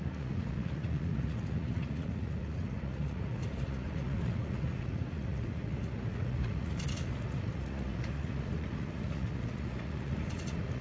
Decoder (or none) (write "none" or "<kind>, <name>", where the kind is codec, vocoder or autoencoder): vocoder, Vocos